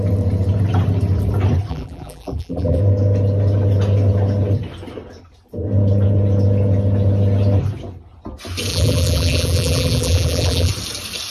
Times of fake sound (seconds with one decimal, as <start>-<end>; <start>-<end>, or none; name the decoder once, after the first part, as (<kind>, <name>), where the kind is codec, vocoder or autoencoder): 1.7-2.8 (vocoder, BigVGAN v2); 8.7-10.7